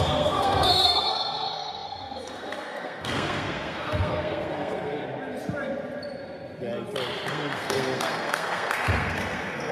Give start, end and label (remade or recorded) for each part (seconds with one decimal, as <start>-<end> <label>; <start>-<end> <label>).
0.0-5.0 remade; 5.0-7.3 recorded; 7.3-9.7 remade